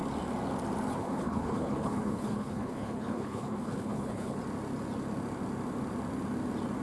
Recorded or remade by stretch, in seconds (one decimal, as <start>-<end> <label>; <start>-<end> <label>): 0.0-1.0 recorded; 1.0-4.4 remade; 4.4-6.8 recorded